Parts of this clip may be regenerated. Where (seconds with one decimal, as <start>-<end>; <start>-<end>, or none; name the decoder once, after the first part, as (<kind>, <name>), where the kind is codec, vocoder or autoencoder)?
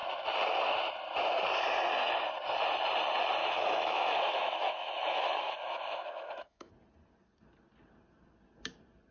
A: 3.4-6.7 (autoencoder, DAC-VAE)